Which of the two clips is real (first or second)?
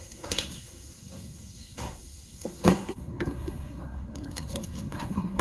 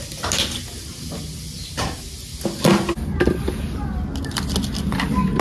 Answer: second